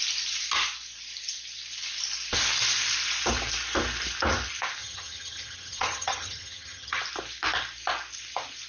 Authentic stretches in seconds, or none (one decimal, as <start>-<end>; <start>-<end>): 0.0-4.8; 7.0-8.7